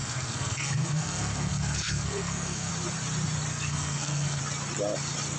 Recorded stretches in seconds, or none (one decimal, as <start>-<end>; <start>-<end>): 2.7-3.5; 4.4-5.4